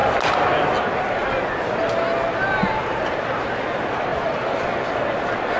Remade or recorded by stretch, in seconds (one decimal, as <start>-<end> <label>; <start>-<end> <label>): 0.0-4.1 recorded; 4.1-4.7 remade; 4.7-5.6 recorded